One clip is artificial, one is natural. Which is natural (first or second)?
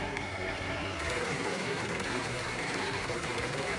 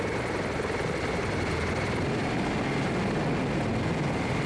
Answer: second